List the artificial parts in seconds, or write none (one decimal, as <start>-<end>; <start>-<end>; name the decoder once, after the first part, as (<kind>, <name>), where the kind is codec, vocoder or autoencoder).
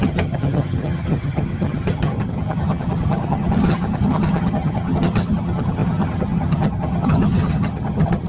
0.0-8.3 (vocoder, HiFi-GAN)